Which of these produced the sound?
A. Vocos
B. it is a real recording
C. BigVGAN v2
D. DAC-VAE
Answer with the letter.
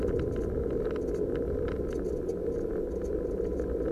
B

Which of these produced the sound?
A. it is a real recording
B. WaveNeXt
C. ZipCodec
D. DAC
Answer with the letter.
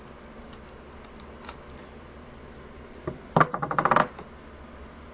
A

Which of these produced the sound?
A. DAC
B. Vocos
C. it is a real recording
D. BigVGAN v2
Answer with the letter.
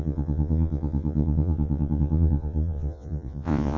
B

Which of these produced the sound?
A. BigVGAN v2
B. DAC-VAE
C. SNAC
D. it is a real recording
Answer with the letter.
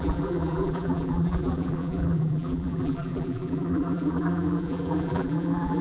A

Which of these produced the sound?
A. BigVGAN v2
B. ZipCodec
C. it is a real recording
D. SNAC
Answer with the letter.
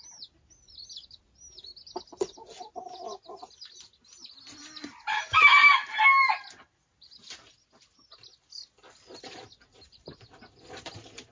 C